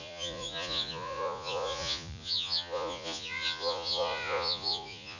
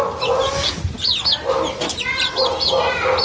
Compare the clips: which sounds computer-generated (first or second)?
first